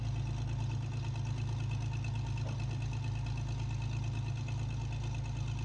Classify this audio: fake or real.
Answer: real